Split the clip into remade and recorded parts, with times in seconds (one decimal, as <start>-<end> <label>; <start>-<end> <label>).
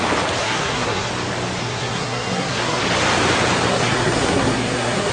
0.0-0.4 recorded; 0.4-1.1 remade; 1.1-1.6 recorded; 1.6-2.8 remade; 2.8-3.7 recorded; 3.7-5.1 remade